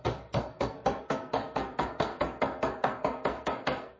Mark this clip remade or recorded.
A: remade